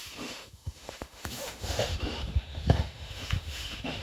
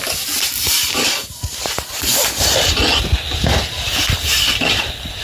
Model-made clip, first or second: first